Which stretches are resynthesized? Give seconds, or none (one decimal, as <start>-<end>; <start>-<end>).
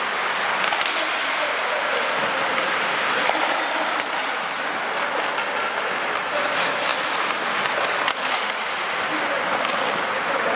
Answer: 1.9-4.2